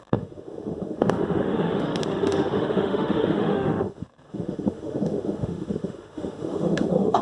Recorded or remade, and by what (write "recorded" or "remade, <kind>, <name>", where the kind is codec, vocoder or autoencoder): remade, autoencoder, DAC-VAE